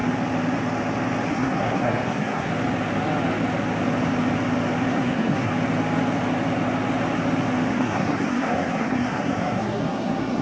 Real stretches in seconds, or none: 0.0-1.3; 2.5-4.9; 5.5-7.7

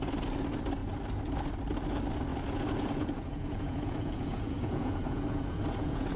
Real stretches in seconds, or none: 0.0-2.3

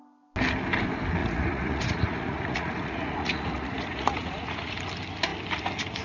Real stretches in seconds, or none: 0.0-1.2; 4.8-6.0

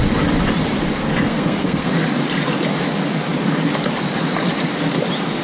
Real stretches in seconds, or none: 0.0-1.0; 1.9-5.4

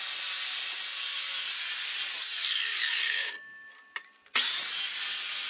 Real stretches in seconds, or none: 0.0-2.7; 3.3-5.5

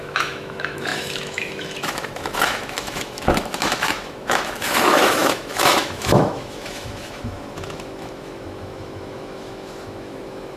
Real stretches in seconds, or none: none

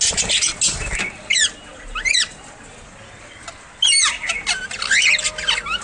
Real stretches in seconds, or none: 0.0-5.8